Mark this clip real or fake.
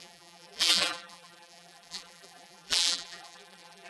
fake